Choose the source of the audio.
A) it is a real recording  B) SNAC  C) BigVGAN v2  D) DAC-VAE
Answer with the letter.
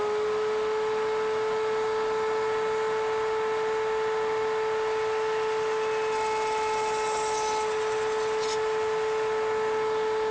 A